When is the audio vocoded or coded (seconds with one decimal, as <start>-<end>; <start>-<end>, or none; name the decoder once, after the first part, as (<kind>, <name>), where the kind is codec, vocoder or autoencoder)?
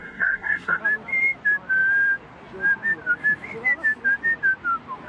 0.0-0.8 (codec, SNAC)